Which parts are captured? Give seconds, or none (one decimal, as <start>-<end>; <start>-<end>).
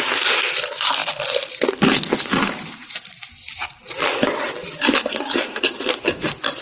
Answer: 1.0-1.5